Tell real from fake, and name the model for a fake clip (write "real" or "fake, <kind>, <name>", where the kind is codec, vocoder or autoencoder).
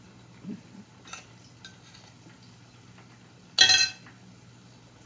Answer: real